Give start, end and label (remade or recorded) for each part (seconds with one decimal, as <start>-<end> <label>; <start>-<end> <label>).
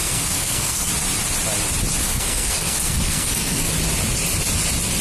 0.0-0.9 remade; 0.9-2.0 recorded; 2.0-3.7 remade; 3.7-5.0 recorded